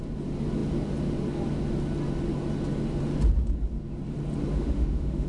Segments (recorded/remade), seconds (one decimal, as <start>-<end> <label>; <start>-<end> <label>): 0.0-4.5 recorded; 4.5-5.3 remade